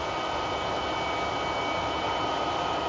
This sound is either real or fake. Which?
real